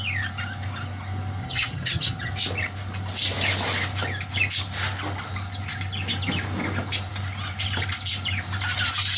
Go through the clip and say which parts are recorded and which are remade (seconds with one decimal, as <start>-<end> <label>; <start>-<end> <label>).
0.0-1.4 recorded; 1.4-2.3 remade; 2.3-9.2 recorded